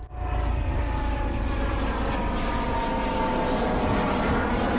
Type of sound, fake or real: real